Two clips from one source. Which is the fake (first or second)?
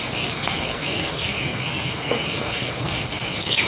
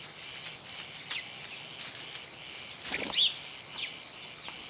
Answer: first